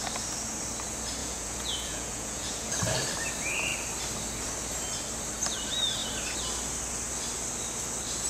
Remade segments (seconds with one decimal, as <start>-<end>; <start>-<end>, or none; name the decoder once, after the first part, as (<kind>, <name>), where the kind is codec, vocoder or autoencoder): 1.2-2.8 (vocoder, Vocos)

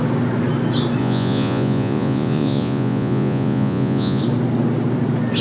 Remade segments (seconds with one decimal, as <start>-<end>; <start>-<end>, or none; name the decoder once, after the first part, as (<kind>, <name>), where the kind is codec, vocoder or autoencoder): 1.0-4.2 (vocoder, Vocos)

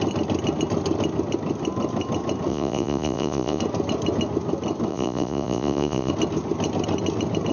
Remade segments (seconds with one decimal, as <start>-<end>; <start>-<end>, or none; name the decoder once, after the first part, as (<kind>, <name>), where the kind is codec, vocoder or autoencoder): 2.5-3.6 (vocoder, Vocos); 4.9-6.1

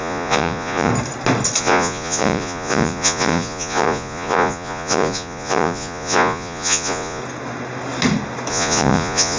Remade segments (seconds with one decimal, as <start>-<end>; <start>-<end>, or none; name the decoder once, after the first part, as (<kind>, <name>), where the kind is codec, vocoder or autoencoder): 0.0-0.9 (vocoder, Vocos); 1.6-7.2; 8.5-9.4

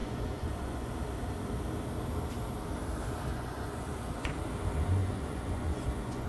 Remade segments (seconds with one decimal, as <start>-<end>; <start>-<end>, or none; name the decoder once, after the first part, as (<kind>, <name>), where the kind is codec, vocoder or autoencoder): 0.0-0.9 (vocoder, Vocos); 3.3-4.3; 5.0-6.3